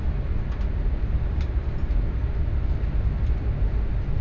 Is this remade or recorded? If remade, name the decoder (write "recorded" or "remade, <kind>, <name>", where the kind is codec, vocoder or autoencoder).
recorded